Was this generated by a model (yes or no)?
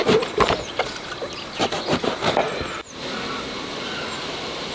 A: no